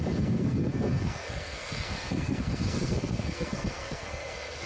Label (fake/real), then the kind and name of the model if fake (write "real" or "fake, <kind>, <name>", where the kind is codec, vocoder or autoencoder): fake, codec, SNAC